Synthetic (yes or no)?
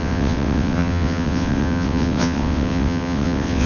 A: yes